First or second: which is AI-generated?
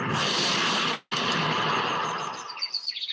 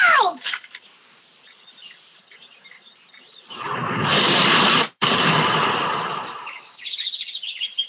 second